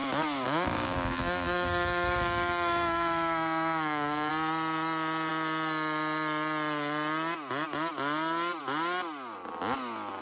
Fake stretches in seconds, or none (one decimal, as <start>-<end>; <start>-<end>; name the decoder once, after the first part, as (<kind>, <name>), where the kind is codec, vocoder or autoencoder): 0.0-4.3 (codec, DAC)